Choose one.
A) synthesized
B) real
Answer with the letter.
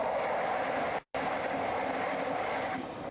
B